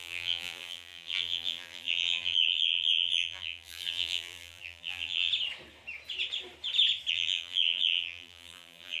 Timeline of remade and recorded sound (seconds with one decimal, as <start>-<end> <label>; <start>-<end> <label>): 0.0-5.3 remade; 5.3-7.1 recorded; 7.1-9.0 remade